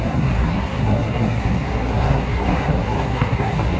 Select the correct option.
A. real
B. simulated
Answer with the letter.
B